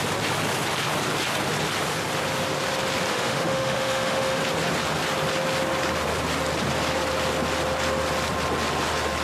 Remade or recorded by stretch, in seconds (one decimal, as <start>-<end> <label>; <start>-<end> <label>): 0.0-3.1 recorded; 3.1-4.4 remade; 4.4-9.2 recorded